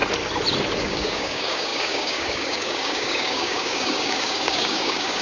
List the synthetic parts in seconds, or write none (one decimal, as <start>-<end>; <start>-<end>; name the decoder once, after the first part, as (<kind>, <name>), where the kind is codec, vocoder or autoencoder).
0.8-5.2 (codec, DAC)